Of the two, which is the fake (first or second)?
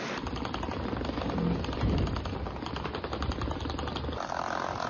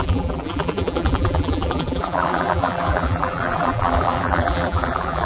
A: second